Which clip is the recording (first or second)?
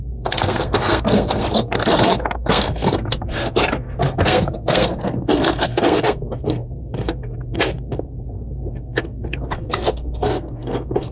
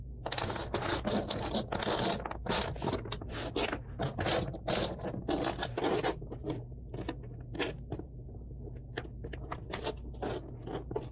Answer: second